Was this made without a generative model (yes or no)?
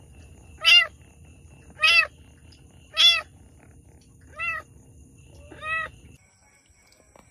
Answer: yes